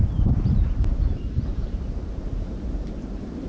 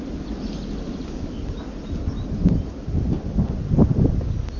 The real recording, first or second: second